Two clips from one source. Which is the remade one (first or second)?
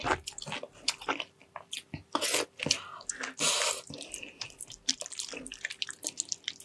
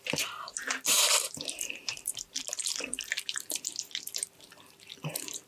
second